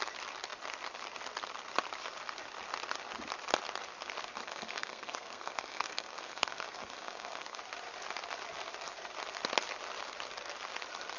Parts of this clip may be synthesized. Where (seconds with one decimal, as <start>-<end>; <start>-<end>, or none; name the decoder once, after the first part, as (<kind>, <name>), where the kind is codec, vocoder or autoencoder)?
4.4-7.6 (codec, SNAC)